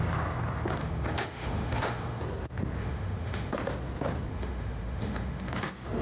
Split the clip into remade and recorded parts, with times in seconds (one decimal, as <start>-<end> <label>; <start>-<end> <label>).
0.0-0.8 recorded; 0.8-2.2 remade; 2.2-2.8 recorded; 2.8-3.5 remade; 3.5-4.3 recorded; 4.3-5.5 remade; 5.5-6.0 recorded